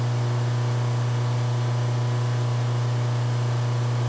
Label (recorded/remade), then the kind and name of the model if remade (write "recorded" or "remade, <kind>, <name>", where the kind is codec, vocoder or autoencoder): recorded